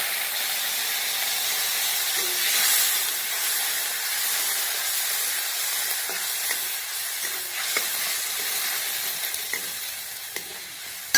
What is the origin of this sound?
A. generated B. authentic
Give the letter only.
B